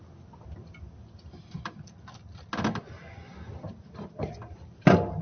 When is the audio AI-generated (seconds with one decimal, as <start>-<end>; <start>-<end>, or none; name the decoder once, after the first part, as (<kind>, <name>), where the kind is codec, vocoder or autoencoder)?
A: none